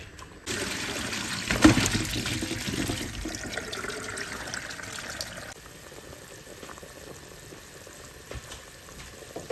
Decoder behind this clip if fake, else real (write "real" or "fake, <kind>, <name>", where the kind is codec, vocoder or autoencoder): real